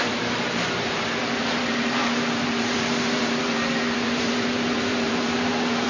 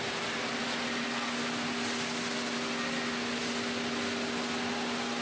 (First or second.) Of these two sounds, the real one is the second